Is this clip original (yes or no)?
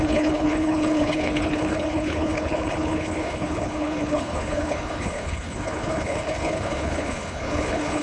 no